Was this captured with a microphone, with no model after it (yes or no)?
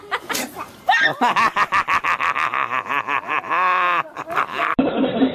no